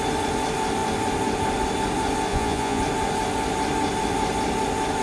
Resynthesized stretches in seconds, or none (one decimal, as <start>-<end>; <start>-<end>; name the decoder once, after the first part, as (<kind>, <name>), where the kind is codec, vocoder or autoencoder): 2.3-2.8 (vocoder, Vocos)